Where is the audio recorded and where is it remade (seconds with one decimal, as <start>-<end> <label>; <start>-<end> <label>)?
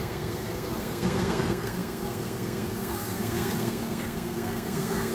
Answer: 0.0-5.1 remade